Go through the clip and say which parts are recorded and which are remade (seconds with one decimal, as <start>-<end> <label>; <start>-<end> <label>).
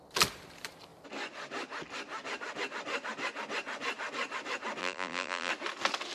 0.0-4.8 recorded; 4.8-5.5 remade; 5.5-6.1 recorded